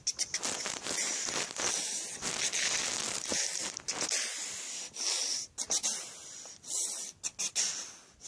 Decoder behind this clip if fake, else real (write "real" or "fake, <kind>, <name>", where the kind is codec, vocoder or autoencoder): real